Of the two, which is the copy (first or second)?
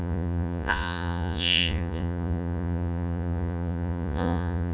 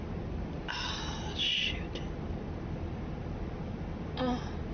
first